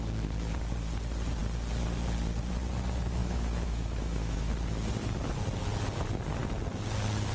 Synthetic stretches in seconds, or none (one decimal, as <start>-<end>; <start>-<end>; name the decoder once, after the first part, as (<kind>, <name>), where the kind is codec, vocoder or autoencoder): 3.2-4.5 (autoencoder, DAC-VAE)